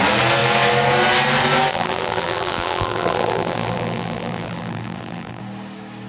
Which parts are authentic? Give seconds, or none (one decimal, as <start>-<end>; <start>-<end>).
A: 0.0-1.7; 5.4-6.1